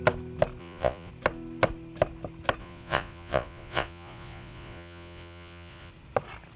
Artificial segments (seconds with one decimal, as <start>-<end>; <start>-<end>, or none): 0.6-1.1; 2.6-5.9